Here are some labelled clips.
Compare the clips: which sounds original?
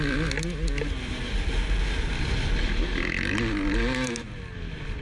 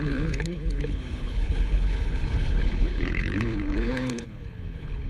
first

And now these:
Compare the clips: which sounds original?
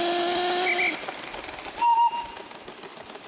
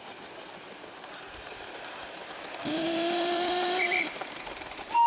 first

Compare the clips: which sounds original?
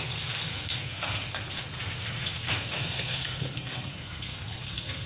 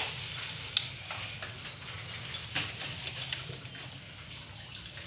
second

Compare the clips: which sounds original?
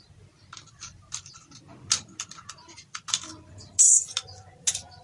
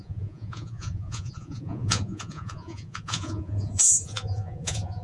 first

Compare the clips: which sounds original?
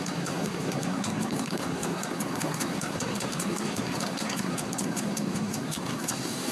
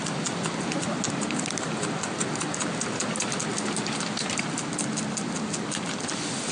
second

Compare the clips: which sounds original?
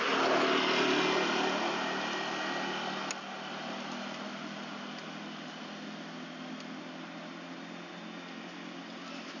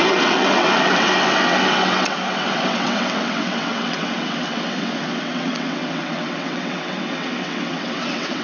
first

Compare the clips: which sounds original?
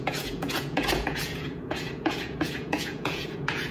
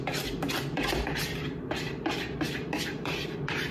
second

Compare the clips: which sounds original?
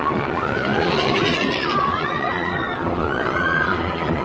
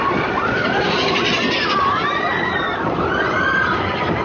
second